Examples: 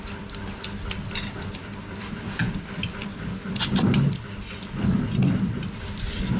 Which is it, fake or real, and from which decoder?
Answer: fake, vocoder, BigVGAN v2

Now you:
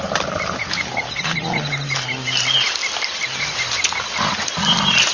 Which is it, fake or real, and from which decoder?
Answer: real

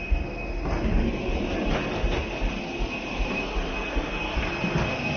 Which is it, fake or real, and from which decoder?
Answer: real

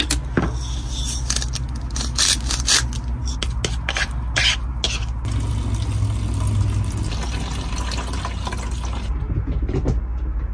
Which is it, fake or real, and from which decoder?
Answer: real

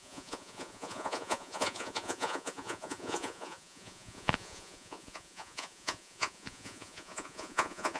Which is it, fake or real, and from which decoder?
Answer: fake, vocoder, Vocos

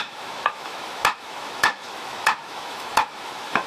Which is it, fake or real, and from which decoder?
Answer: fake, autoencoder, DAC-VAE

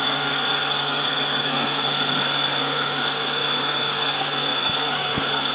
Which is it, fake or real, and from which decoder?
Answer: fake, codec, SNAC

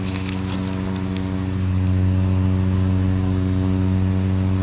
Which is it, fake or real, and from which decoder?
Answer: real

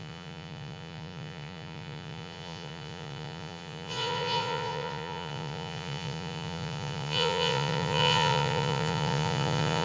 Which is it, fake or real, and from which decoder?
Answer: fake, vocoder, Vocos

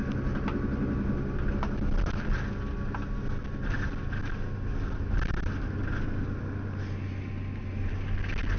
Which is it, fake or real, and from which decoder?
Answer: real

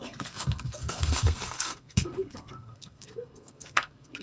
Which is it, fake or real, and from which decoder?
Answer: fake, codec, SNAC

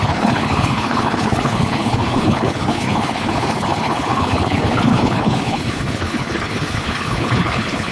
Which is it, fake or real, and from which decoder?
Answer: fake, codec, HILCodec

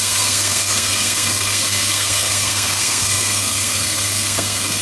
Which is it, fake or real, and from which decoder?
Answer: fake, codec, SNAC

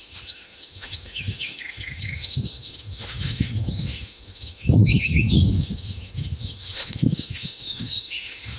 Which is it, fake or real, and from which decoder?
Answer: fake, autoencoder, DAC-VAE